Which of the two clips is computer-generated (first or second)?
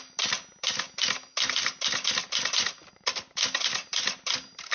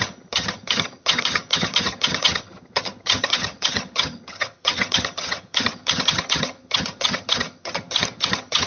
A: second